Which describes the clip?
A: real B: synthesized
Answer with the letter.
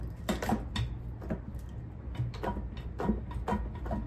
A